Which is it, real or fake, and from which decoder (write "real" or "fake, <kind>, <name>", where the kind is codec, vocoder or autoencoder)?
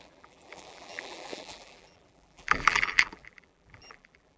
fake, vocoder, BigVGAN v2